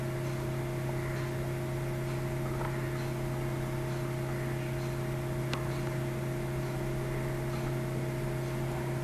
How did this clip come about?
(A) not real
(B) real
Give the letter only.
B